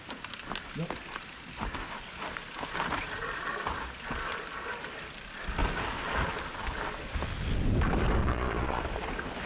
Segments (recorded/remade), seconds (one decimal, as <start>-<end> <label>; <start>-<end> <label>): 0.0-8.2 recorded; 8.2-8.8 remade; 8.8-9.5 recorded